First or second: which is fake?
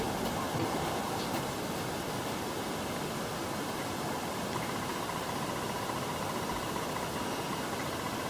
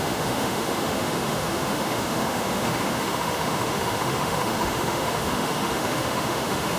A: second